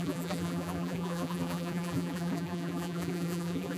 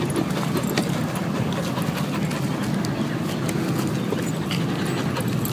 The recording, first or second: second